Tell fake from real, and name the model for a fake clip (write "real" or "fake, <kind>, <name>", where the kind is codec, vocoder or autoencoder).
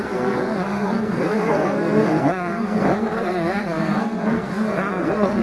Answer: fake, codec, SNAC